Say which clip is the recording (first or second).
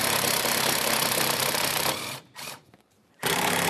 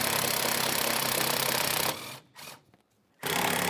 second